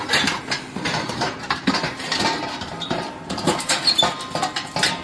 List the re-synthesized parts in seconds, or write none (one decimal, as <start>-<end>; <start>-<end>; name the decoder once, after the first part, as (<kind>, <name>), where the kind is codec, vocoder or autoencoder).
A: 0.9-3.9 (vocoder, BigVGAN v2)